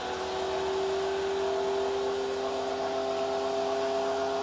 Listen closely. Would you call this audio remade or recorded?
recorded